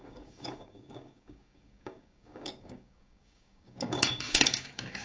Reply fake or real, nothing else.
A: fake